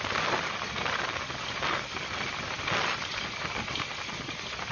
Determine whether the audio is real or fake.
real